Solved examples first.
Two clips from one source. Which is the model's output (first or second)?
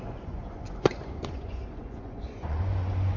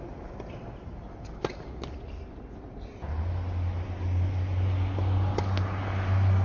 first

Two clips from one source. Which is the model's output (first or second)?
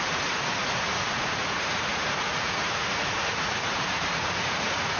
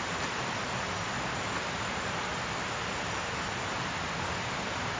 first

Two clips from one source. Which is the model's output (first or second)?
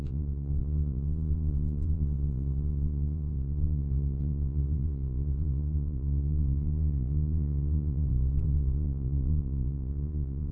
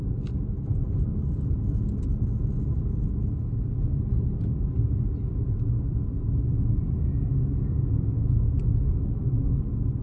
first